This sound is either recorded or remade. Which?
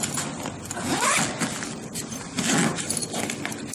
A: recorded